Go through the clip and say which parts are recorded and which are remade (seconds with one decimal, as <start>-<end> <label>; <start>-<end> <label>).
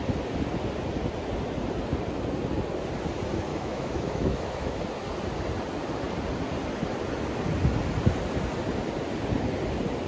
0.0-3.5 recorded; 3.5-4.8 remade; 4.8-10.1 recorded